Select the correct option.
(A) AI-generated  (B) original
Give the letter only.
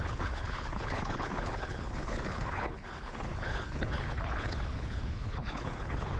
A